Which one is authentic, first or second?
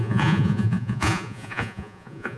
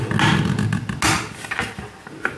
second